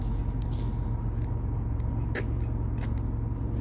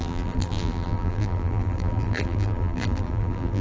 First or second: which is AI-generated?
second